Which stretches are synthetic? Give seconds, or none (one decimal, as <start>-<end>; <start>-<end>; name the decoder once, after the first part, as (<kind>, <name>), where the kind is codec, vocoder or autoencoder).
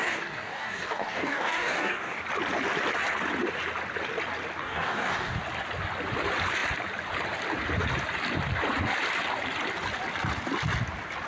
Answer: 0.0-2.2 (codec, DAC); 4.6-5.4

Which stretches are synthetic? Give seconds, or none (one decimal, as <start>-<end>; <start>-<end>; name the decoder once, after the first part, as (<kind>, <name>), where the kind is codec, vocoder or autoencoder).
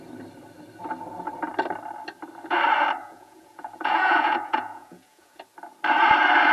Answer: 3.0-5.4 (vocoder, Vocos)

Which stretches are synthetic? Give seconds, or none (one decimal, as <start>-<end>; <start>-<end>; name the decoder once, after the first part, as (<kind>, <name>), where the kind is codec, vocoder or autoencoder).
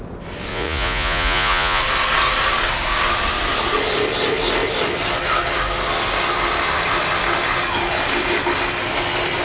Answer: 0.5-1.8 (vocoder, Vocos)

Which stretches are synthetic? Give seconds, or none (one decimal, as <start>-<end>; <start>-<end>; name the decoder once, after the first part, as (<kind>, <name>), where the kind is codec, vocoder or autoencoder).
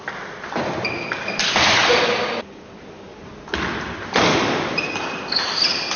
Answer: none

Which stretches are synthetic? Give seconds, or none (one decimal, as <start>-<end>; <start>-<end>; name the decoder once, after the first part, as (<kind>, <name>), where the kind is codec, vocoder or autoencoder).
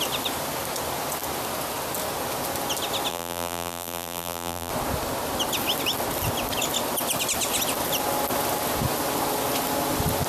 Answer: 3.1-4.7 (vocoder, BigVGAN v2)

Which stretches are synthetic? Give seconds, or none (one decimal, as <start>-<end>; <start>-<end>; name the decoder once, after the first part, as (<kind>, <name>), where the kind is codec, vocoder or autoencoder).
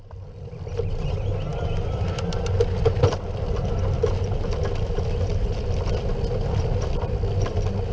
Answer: none